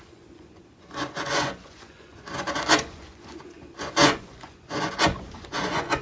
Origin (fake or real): fake